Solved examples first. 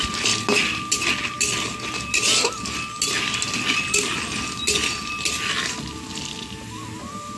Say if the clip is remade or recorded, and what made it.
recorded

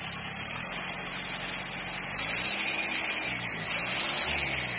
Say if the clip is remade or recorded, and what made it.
recorded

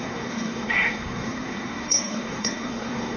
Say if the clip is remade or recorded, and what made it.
remade, codec, SNAC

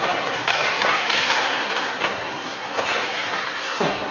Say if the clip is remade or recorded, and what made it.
remade, codec, SNAC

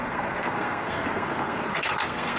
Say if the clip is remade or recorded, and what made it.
remade, codec, SNAC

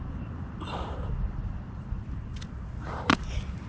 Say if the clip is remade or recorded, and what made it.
remade, vocoder, BigVGAN v2